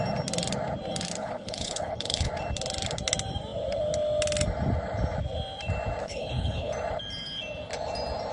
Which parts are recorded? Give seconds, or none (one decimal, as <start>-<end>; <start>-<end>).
0.0-1.2; 2.3-6.0; 6.7-8.3